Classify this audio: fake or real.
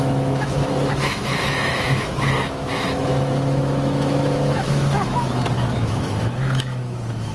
fake